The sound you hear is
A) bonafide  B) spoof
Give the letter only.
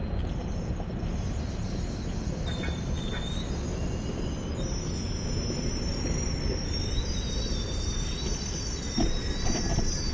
A